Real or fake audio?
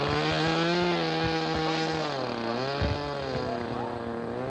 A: real